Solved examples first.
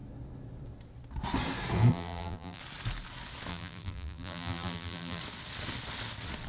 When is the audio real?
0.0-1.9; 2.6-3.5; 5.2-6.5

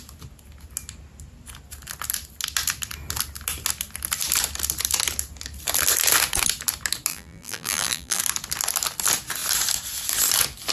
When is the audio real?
0.0-7.1; 8.2-10.7

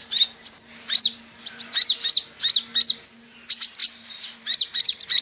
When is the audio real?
0.0-3.8